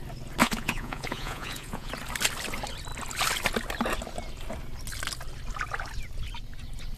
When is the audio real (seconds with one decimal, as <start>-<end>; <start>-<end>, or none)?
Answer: 0.0-0.4; 1.9-7.0